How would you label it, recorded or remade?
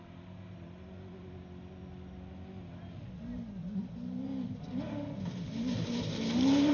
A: recorded